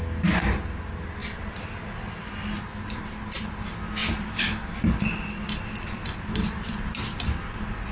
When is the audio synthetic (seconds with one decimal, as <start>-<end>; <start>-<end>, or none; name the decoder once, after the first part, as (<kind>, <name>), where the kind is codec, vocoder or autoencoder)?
4.0-7.9 (vocoder, BigVGAN v2)